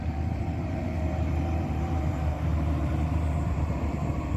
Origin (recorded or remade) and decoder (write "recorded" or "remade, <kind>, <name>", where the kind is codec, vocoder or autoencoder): remade, vocoder, BigVGAN v2